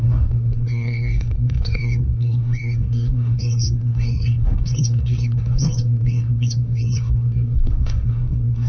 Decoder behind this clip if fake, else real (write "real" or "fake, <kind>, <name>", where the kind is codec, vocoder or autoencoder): fake, codec, SNAC